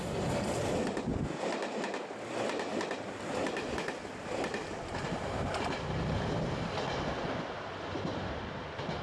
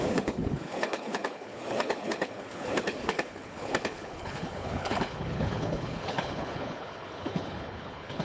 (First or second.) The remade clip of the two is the second